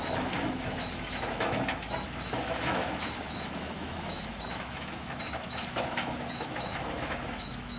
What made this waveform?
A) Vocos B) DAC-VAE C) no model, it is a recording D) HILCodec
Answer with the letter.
B